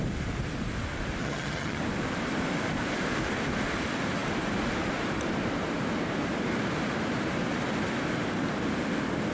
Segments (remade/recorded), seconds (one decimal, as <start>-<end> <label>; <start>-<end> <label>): 0.0-1.2 recorded; 1.2-1.8 remade; 1.8-9.3 recorded